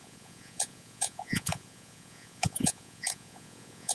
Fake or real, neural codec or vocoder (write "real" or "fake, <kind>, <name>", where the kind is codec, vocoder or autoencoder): fake, vocoder, Vocos